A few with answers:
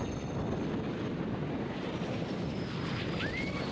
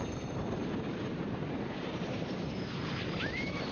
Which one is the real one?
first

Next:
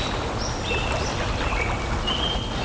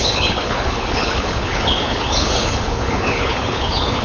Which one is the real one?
first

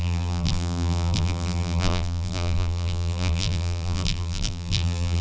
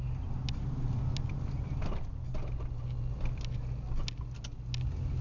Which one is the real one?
second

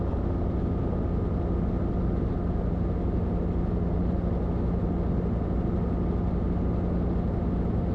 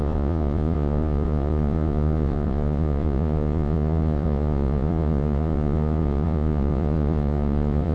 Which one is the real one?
first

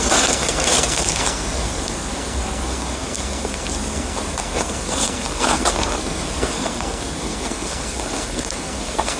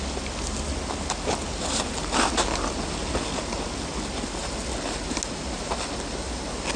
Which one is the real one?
second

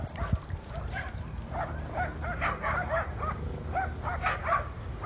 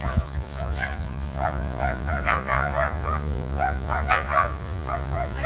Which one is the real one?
first